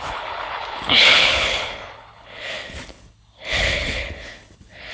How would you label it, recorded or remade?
remade